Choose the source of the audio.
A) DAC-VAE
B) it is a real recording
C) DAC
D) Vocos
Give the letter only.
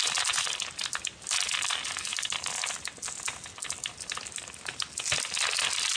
B